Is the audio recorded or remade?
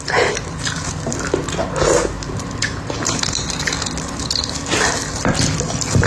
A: recorded